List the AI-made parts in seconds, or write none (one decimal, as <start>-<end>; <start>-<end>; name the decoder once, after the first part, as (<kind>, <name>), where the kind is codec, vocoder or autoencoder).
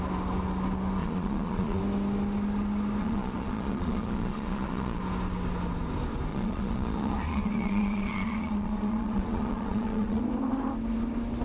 1.0-1.8 (vocoder, Vocos); 3.0-5.0; 6.3-10.2